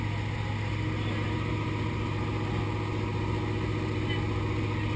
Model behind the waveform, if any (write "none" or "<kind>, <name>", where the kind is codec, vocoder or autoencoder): none